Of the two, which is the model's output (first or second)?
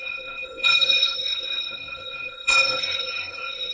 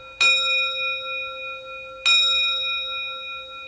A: first